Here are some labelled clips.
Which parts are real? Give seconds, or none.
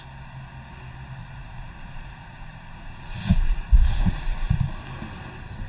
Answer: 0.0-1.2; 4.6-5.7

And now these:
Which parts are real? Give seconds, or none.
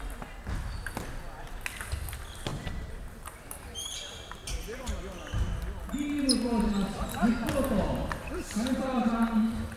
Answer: 0.0-2.5; 5.0-8.0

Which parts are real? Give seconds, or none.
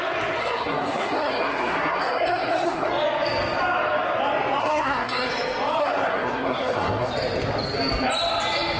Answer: 0.0-0.4; 2.9-4.6; 5.3-5.8; 7.1-8.8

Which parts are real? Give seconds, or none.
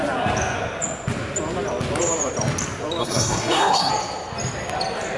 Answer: 0.0-3.0; 3.9-5.2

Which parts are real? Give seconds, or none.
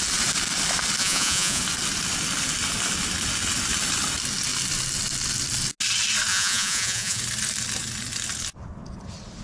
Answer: 0.0-1.0; 1.6-6.3; 7.2-9.4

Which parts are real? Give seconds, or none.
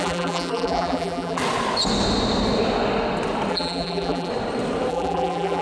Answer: 1.4-3.5; 4.3-4.9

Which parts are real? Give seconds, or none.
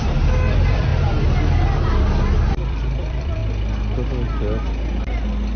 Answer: 0.9-2.4; 3.4-5.6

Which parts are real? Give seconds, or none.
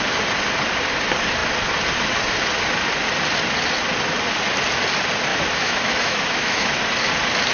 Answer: 0.0-5.3; 6.8-7.5